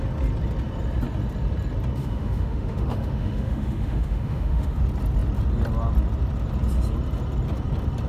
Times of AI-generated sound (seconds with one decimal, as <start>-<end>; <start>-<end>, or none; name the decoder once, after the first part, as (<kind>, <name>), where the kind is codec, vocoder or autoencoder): 2.0-4.8 (autoencoder, DAC-VAE)